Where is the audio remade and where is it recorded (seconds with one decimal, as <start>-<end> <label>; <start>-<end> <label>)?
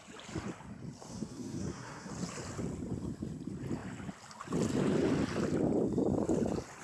0.0-1.1 recorded; 1.1-2.1 remade; 2.1-6.8 recorded